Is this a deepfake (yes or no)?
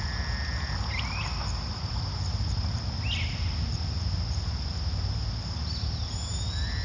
no